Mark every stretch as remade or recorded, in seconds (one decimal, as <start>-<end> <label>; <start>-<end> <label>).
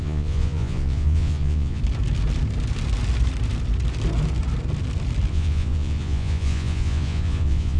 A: 0.0-1.8 remade; 1.8-5.3 recorded; 5.3-7.8 remade